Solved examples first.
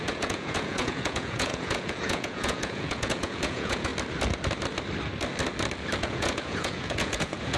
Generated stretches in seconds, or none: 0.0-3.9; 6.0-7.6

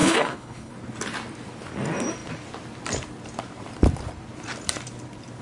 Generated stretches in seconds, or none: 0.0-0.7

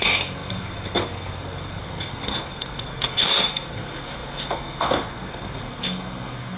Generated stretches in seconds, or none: 0.0-6.6

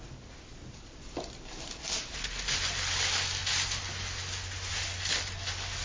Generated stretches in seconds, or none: none